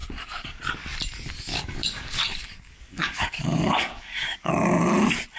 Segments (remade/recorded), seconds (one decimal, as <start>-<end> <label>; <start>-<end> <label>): 0.0-0.6 remade; 0.6-1.5 recorded; 1.5-4.5 remade; 4.5-5.4 recorded